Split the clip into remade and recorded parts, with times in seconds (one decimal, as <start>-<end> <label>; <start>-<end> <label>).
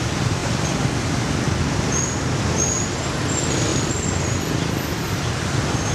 0.0-3.7 recorded; 3.7-5.9 remade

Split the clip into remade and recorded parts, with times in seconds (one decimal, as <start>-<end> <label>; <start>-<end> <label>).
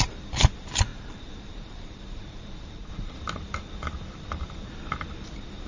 0.0-0.9 recorded; 0.9-3.2 remade; 3.2-5.7 recorded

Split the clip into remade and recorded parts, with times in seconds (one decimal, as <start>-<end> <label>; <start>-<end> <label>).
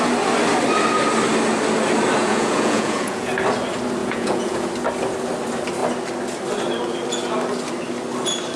0.0-2.2 recorded; 2.2-3.3 remade; 3.3-4.0 recorded; 4.0-4.7 remade; 4.7-8.6 recorded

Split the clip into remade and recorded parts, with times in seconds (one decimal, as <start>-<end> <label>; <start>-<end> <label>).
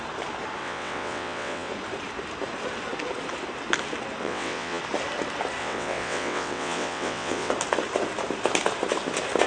0.0-0.6 recorded; 0.6-1.7 remade; 1.7-4.2 recorded; 4.2-4.8 remade; 4.8-5.6 recorded; 5.6-7.5 remade; 7.5-9.5 recorded